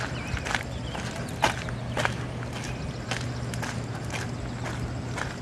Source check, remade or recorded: recorded